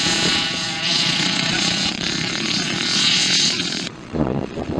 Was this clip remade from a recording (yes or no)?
yes